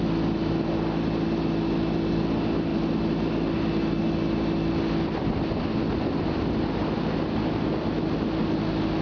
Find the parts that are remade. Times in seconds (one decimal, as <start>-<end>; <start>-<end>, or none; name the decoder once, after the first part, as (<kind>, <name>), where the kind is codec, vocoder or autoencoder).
none